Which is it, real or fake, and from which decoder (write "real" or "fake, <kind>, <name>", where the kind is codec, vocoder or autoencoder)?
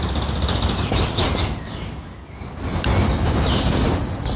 real